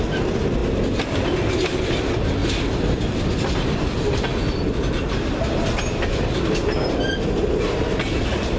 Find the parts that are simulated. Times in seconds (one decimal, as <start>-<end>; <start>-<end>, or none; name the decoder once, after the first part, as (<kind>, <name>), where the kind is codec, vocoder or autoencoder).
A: none